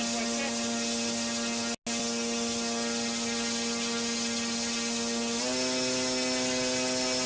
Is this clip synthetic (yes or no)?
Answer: no